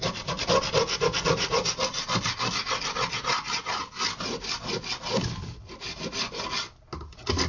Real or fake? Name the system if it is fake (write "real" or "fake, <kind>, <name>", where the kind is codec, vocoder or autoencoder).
real